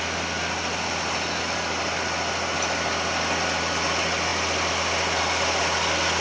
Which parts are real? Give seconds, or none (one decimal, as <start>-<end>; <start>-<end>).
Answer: 0.0-6.2